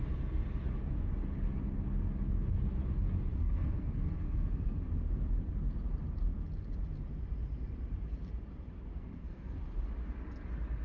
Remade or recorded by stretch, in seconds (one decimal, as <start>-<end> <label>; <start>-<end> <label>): 0.0-3.3 recorded; 3.3-4.9 remade; 4.9-8.9 recorded; 8.9-9.6 remade; 9.6-10.8 recorded